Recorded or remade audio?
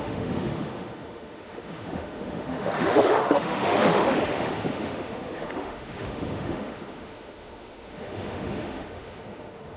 remade